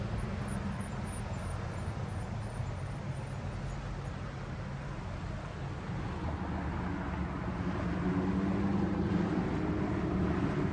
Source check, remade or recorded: recorded